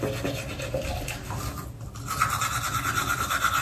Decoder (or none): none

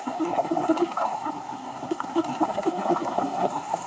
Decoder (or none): codec, SNAC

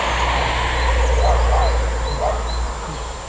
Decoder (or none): none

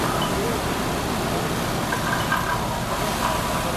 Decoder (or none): none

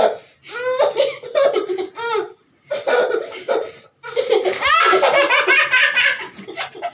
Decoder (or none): none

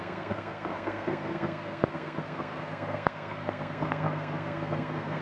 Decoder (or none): codec, SNAC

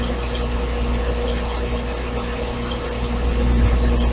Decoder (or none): none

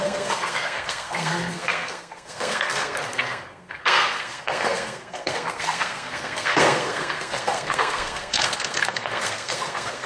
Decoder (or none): codec, SNAC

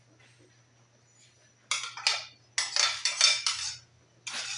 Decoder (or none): none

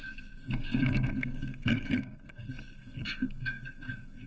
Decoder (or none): codec, SNAC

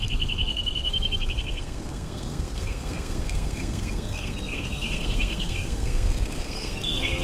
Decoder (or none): codec, SNAC